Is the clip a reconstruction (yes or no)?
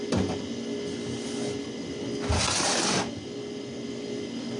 no